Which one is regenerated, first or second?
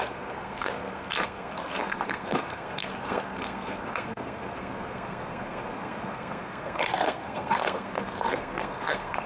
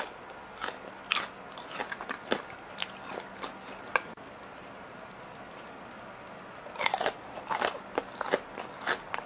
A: first